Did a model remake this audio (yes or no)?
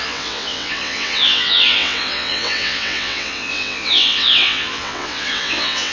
yes